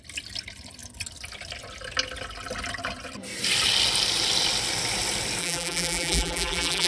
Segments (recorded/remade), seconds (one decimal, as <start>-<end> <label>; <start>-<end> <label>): 0.0-5.4 recorded; 5.4-6.9 remade